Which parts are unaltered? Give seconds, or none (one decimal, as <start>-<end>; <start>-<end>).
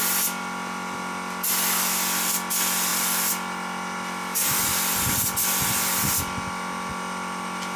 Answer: 0.0-7.8